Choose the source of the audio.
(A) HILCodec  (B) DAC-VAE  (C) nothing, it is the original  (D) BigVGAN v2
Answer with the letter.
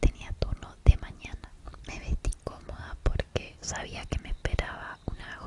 C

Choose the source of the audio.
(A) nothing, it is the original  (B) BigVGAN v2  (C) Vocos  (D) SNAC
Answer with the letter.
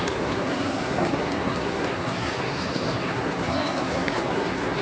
D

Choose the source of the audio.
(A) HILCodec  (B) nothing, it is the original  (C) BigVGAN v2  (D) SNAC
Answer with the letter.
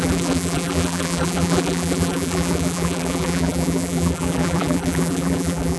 C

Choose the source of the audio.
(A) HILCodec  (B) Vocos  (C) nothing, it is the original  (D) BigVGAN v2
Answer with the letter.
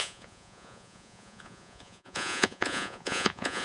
B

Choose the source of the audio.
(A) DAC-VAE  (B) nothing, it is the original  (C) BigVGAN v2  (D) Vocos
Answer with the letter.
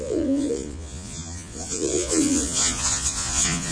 D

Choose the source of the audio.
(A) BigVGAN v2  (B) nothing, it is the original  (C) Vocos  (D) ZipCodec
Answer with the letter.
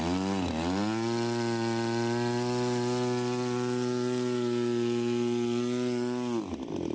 B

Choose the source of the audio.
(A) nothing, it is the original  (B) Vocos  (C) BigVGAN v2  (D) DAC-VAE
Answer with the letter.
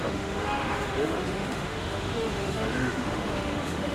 D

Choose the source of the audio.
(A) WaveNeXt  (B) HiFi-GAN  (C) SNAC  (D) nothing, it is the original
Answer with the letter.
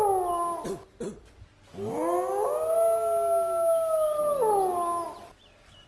D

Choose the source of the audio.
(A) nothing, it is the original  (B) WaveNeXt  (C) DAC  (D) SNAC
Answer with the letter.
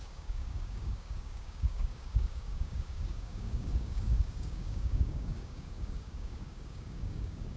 C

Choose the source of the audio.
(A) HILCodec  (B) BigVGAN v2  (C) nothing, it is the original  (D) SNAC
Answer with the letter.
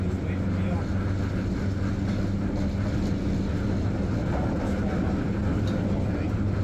C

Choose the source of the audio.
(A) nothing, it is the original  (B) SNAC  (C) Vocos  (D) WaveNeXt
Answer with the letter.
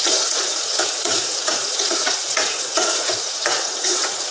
C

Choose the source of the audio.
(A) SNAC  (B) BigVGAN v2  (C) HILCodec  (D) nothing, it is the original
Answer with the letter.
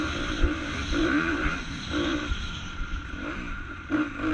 B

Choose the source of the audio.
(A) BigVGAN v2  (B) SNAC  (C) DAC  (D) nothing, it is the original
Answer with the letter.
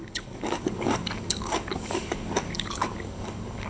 C